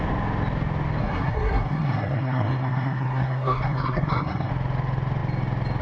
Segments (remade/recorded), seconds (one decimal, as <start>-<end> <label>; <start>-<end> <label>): 0.0-1.0 recorded; 1.0-4.5 remade; 4.5-5.8 recorded